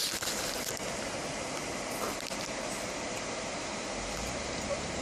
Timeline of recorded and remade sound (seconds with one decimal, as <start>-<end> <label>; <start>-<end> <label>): 0.0-1.0 recorded; 1.0-1.6 remade; 1.6-3.1 recorded; 3.1-5.0 remade